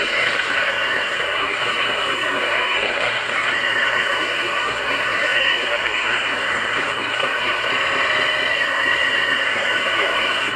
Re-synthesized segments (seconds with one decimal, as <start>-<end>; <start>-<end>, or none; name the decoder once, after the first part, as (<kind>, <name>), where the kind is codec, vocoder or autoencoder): 0.0-7.7 (codec, SNAC); 8.5-10.6